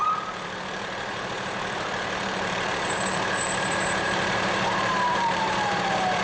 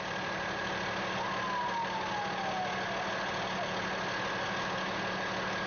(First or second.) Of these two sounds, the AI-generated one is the first